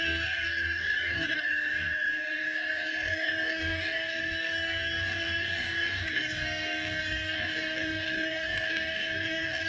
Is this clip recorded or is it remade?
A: remade